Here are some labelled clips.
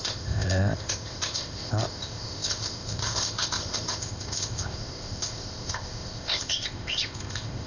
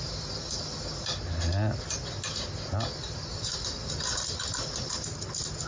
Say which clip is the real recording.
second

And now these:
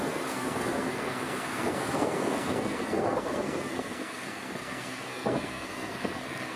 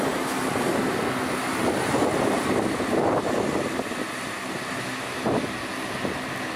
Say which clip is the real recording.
second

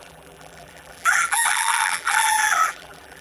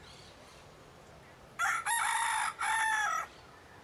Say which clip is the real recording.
second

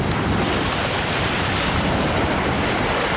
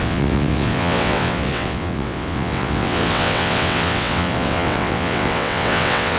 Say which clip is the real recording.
first